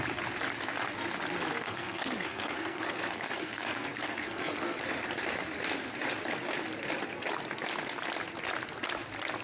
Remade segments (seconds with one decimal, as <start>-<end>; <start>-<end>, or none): 1.5-4.8